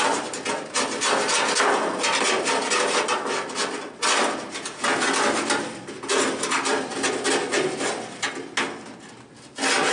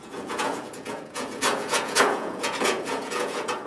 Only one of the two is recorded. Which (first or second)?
first